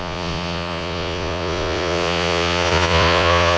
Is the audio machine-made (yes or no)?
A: yes